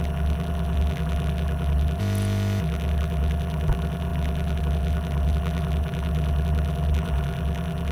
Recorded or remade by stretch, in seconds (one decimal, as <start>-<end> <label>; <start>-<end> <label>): 0.0-2.0 remade; 2.0-2.6 recorded; 2.6-7.9 remade